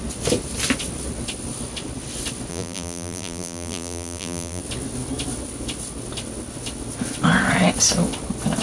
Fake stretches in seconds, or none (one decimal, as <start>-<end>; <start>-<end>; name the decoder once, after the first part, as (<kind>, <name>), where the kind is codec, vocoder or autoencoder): 2.5-4.6 (vocoder, BigVGAN v2)